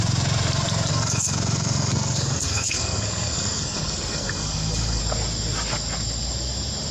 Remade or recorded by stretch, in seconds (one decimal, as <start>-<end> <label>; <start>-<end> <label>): 0.0-0.9 recorded; 0.9-5.0 remade; 5.0-6.9 recorded

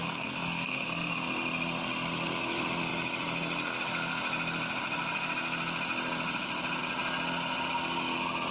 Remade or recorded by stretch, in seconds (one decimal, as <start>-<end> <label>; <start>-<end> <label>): 0.0-1.1 remade; 1.1-8.5 recorded

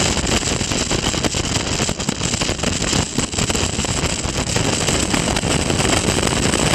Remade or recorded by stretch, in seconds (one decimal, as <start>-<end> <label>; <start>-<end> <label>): 0.0-6.7 recorded

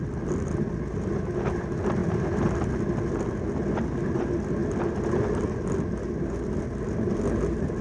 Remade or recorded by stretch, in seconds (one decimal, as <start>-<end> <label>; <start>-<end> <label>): 0.0-7.8 recorded

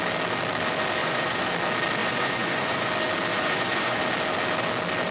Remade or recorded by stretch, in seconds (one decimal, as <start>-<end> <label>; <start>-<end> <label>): 0.0-1.0 recorded; 1.0-1.5 remade; 1.5-2.0 recorded; 2.0-2.9 remade; 2.9-3.3 recorded; 3.3-4.0 remade; 4.0-5.1 recorded